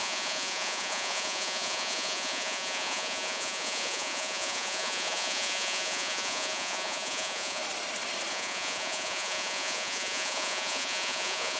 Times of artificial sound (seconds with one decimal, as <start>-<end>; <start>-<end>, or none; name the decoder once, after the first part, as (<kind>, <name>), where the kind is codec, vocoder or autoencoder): 0.0-7.6 (vocoder, Vocos); 8.3-11.6